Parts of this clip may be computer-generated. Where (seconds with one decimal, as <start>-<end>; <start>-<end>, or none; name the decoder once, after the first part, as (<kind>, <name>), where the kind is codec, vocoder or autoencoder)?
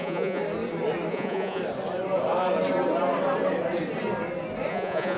0.0-0.4 (vocoder, Vocos); 1.1-1.6; 4.7-5.2